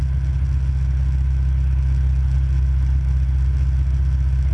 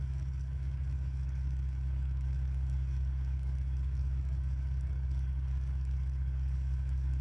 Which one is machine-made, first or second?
second